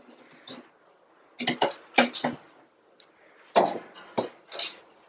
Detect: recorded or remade recorded